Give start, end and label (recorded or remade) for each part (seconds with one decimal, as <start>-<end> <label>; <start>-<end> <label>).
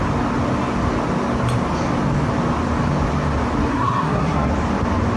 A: 0.0-3.7 recorded; 3.7-4.5 remade; 4.5-5.2 recorded